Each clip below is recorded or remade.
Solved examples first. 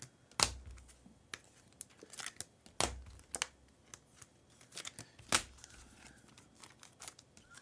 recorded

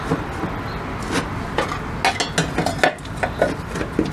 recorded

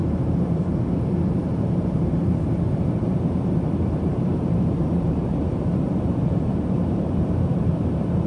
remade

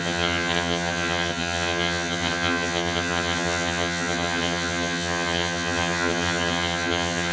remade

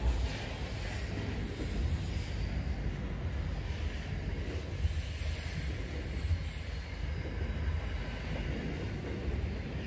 recorded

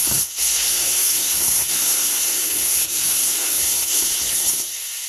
remade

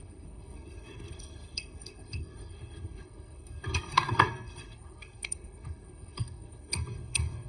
remade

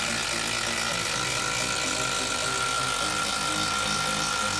recorded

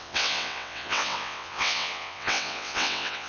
remade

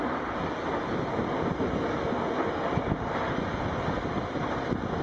recorded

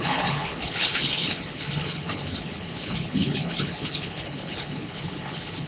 remade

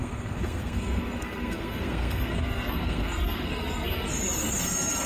remade